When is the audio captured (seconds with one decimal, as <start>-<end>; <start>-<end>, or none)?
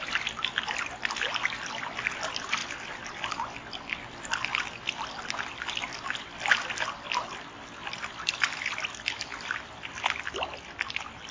0.0-2.6; 3.3-11.3